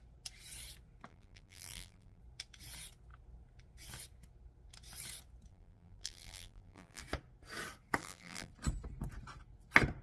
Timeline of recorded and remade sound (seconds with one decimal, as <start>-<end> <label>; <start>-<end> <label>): 0.0-1.1 recorded; 1.1-2.2 remade; 2.2-5.5 recorded; 5.5-7.0 remade; 7.0-8.0 recorded; 8.0-8.5 remade; 8.5-10.0 recorded